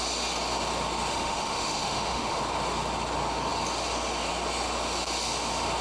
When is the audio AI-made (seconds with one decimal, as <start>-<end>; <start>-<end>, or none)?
1.1-2.4